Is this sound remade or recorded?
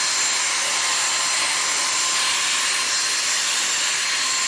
recorded